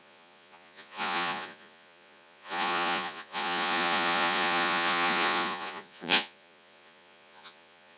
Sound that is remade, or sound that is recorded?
remade